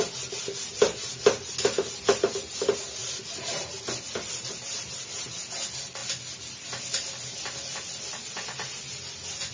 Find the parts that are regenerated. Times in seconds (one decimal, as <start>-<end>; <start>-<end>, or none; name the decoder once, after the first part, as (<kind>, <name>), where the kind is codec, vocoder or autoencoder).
none